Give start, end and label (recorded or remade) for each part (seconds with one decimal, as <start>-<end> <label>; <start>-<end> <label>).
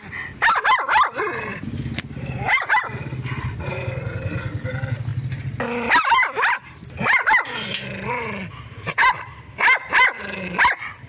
0.0-1.5 recorded; 1.5-2.9 remade; 2.9-11.1 recorded